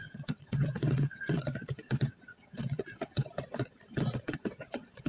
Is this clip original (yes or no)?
no